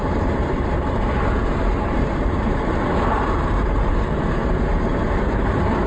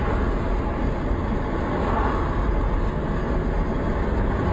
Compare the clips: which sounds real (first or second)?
second